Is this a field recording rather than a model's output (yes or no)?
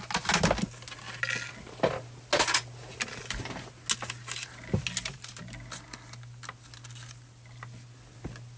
yes